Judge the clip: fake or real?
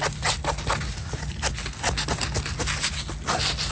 real